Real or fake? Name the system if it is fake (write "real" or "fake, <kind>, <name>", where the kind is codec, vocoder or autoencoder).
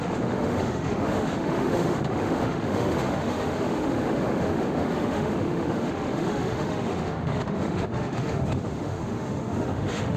fake, autoencoder, DAC-VAE